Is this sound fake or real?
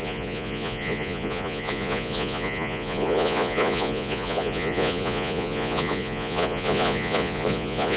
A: fake